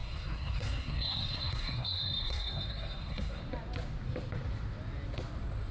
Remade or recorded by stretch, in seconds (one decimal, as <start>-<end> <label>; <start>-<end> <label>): 0.0-3.4 remade; 3.4-5.7 recorded